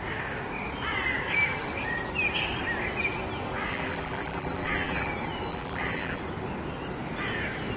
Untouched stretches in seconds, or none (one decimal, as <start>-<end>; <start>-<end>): 0.0-3.7; 5.1-5.5; 6.2-7.8